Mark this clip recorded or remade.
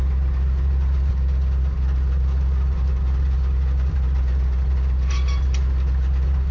recorded